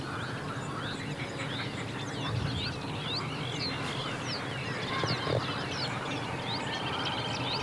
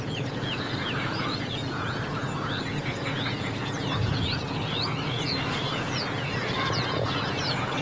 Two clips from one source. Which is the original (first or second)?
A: first